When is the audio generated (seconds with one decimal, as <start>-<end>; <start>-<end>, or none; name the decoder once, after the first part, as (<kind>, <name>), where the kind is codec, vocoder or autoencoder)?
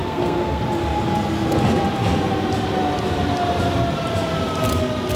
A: 0.0-0.6 (codec, SNAC)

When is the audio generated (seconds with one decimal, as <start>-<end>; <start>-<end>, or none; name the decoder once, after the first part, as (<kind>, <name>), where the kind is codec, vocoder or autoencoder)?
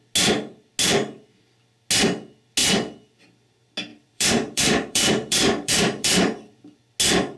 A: 2.6-3.2 (vocoder, BigVGAN v2); 3.9-6.8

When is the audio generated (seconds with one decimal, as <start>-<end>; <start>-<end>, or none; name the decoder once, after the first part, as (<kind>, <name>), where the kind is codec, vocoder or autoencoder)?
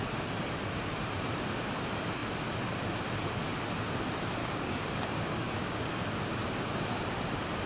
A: 4.4-6.0 (codec, DAC)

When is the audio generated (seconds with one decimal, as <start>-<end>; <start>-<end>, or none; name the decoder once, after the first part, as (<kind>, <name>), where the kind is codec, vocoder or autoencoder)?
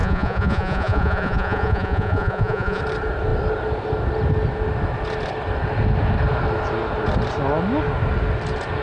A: 0.0-2.8 (vocoder, Vocos)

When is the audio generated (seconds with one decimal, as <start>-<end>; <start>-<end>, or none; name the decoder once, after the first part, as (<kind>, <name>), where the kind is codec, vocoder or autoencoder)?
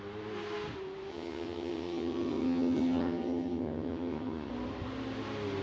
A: 1.1-4.5 (vocoder, HiFi-GAN)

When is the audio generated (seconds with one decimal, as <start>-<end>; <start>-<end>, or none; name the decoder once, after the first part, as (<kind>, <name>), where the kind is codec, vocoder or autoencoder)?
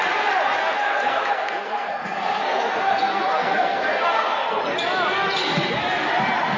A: 0.6-4.6 (codec, SNAC)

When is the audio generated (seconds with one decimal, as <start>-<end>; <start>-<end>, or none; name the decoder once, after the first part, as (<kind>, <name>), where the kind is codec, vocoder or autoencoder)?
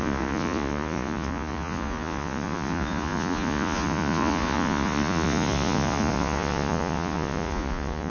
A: 0.0-8.1 (vocoder, Vocos)